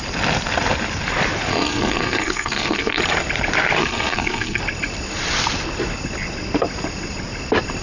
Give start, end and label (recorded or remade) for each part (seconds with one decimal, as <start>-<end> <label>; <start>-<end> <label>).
0.0-1.5 recorded; 1.5-3.0 remade; 3.0-3.8 recorded; 3.8-4.6 remade; 4.6-7.8 recorded